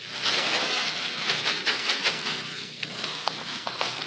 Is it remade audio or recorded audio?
remade